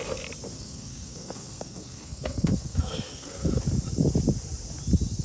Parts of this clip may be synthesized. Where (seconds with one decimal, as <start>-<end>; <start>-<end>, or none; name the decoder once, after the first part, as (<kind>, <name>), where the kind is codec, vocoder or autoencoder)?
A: 0.5-3.6 (codec, SNAC)